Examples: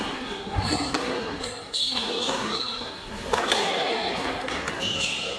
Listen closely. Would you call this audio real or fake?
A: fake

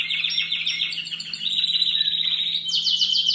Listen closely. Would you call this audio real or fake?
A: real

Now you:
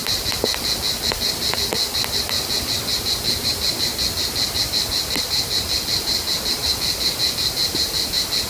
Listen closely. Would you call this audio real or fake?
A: real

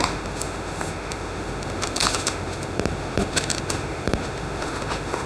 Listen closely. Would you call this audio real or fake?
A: fake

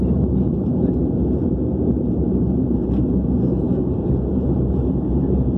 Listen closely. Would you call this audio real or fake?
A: fake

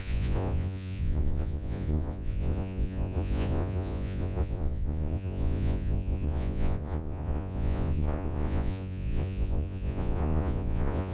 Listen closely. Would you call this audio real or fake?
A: fake